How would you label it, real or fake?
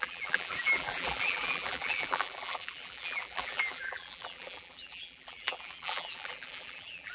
fake